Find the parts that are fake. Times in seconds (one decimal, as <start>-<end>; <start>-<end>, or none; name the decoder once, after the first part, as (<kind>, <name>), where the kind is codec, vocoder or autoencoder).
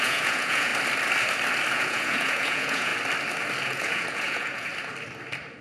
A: 0.0-0.7 (vocoder, Vocos); 1.7-2.9; 3.6-4.7